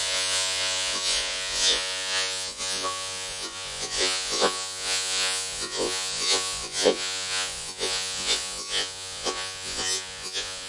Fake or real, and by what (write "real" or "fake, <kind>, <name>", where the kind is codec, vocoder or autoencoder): fake, vocoder, Vocos